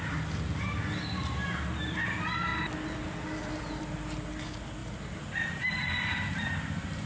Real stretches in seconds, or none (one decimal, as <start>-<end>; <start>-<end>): 0.0-4.8